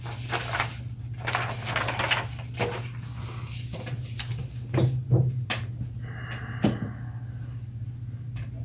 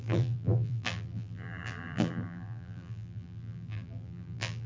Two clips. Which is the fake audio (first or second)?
second